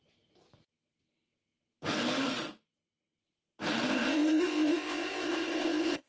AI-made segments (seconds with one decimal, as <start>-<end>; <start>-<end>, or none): 3.9-6.1